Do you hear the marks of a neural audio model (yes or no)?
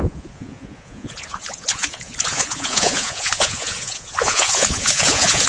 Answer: yes